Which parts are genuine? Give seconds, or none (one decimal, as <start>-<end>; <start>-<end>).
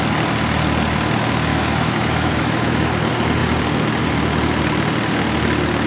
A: 0.0-1.5; 2.9-5.9